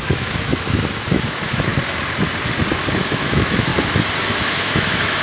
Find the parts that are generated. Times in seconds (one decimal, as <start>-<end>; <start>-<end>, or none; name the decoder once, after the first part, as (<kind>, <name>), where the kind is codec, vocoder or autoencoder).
0.0-0.5 (autoencoder, DAC-VAE); 1.1-1.7; 3.1-3.7; 4.3-5.2